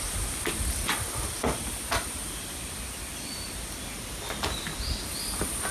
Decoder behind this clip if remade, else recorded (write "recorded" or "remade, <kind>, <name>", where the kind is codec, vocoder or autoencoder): recorded